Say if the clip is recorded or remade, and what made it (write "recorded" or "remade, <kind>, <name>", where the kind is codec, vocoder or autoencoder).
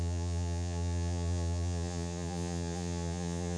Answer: remade, vocoder, Vocos